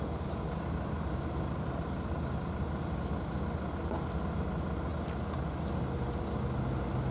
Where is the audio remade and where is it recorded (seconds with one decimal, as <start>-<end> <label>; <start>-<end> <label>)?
0.0-7.1 recorded